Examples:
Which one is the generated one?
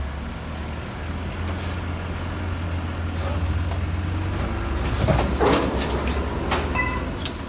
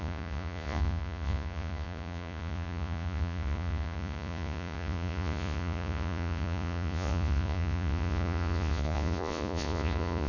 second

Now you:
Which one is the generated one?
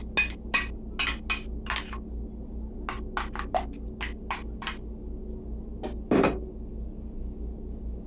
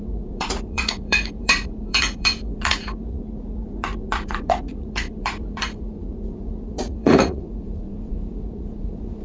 second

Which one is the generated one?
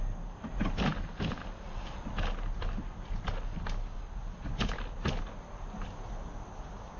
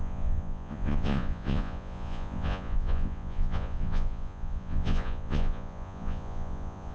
second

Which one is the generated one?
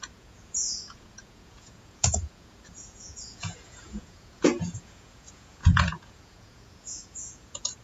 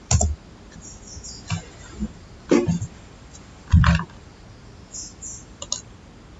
first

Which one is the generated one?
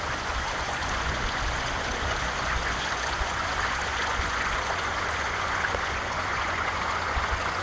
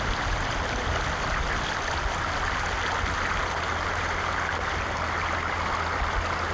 first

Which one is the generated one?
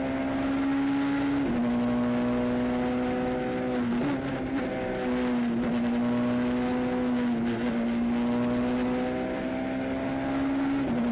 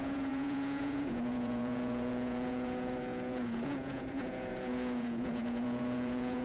second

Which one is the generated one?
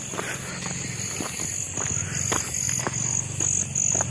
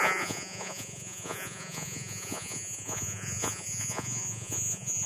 second